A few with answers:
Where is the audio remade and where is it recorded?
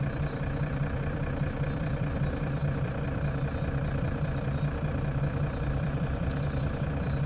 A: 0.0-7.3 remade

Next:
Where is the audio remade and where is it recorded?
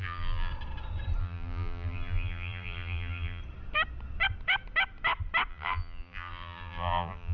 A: 0.0-0.5 remade; 0.5-1.2 recorded; 1.2-3.4 remade; 3.4-5.5 recorded; 5.5-7.3 remade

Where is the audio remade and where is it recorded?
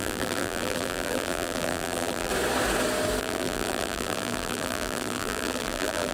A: 0.0-2.3 remade; 2.3-3.2 recorded; 3.2-6.1 remade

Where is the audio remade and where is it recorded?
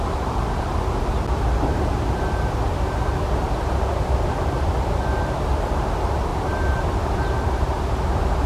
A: 0.0-6.3 recorded; 6.3-7.3 remade; 7.3-8.5 recorded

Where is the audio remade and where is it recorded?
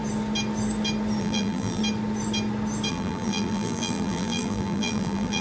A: 0.0-1.2 recorded; 1.2-1.8 remade; 1.8-2.9 recorded; 2.9-5.4 remade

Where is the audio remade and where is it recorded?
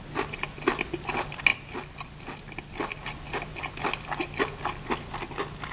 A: 0.0-5.7 recorded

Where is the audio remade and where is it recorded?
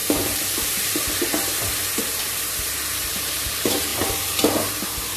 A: 0.0-5.2 remade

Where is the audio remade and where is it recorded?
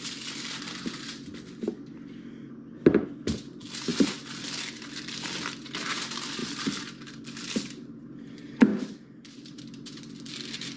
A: 0.0-8.7 recorded; 8.7-9.6 remade; 9.6-10.8 recorded